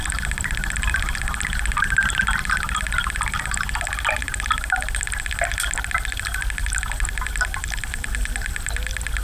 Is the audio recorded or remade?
recorded